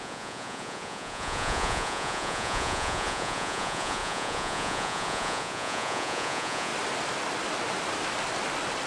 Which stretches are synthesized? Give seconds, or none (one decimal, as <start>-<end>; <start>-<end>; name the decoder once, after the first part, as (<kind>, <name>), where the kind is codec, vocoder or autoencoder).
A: 0.0-6.7 (vocoder, Vocos)